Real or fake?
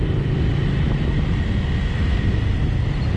real